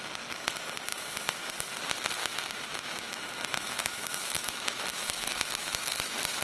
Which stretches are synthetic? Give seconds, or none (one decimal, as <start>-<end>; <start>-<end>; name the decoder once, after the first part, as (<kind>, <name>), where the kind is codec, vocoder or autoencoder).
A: 0.9-1.5 (autoencoder, DAC-VAE); 2.2-6.0